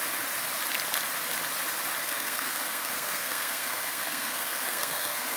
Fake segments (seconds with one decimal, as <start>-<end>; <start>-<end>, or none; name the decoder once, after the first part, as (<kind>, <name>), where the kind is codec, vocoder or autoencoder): 2.0-5.4 (codec, SNAC)